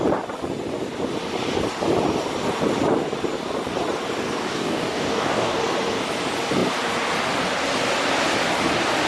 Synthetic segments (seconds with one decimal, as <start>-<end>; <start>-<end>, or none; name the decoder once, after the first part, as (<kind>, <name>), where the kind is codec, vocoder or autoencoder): 4.4-5.6 (codec, DAC)